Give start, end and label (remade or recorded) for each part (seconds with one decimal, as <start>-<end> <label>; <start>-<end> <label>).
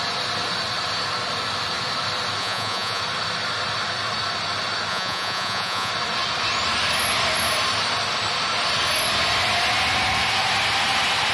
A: 0.0-2.4 recorded; 2.4-3.0 remade; 3.0-4.9 recorded; 4.9-5.9 remade; 5.9-11.3 recorded